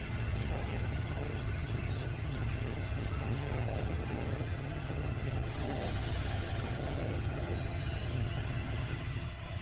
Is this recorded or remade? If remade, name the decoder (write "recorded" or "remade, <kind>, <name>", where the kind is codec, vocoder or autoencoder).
remade, vocoder, HiFi-GAN